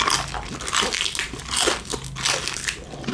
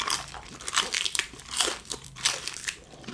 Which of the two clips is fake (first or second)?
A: second